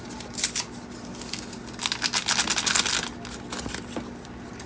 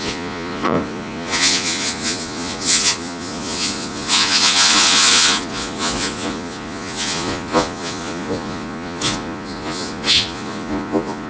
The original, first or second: first